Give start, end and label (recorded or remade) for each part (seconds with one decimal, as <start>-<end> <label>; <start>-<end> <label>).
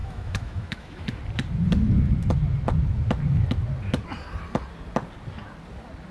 0.0-1.2 remade; 1.2-6.1 recorded